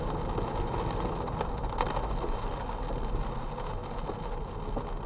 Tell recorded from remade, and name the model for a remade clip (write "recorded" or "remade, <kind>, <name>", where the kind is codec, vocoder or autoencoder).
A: recorded